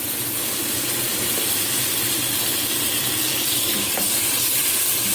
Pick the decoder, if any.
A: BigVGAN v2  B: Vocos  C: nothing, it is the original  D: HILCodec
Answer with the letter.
A